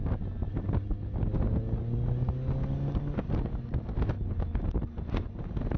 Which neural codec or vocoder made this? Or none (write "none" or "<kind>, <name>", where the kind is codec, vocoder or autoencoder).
none